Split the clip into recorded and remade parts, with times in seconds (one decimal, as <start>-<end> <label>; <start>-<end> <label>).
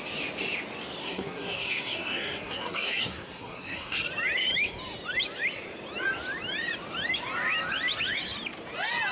0.0-1.0 recorded; 1.0-4.0 remade; 4.0-9.1 recorded